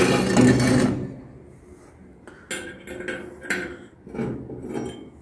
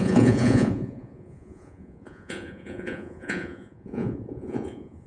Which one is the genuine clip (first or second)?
first